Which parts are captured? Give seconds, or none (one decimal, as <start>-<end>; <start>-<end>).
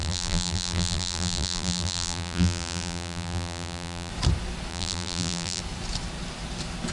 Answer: 4.1-4.7; 5.6-6.9